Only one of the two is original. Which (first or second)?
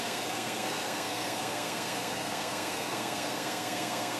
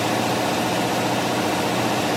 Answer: second